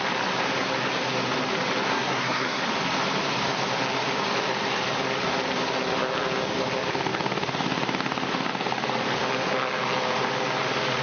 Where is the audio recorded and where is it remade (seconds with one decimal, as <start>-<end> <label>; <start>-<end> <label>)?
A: 0.0-1.9 recorded; 1.9-2.6 remade; 2.6-11.0 recorded